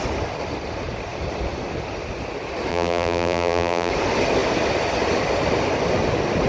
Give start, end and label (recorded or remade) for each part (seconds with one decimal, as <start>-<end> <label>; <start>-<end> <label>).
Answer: 0.0-2.7 recorded; 2.7-3.9 remade; 3.9-6.5 recorded